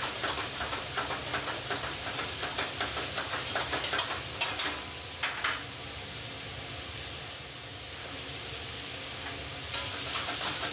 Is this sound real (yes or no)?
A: yes